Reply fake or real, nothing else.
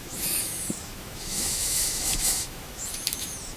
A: fake